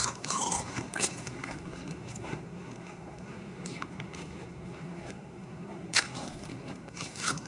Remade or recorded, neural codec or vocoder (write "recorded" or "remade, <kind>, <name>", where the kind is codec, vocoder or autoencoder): remade, codec, SNAC